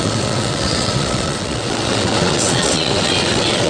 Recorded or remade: remade